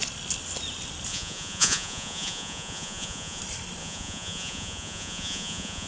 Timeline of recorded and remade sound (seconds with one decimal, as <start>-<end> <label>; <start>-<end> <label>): 0.0-1.1 recorded; 1.1-3.4 remade; 3.4-3.8 recorded; 3.8-5.9 remade